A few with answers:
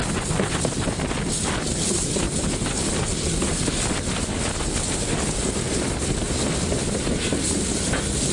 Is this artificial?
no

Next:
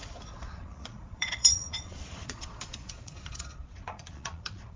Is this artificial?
yes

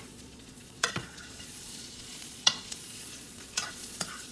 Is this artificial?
yes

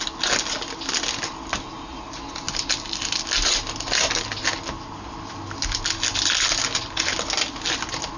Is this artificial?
no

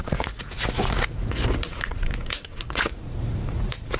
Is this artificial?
yes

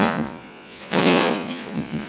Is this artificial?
yes